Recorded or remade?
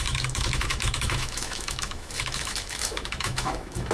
remade